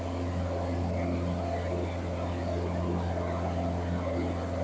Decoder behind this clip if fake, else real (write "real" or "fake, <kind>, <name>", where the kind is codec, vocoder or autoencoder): real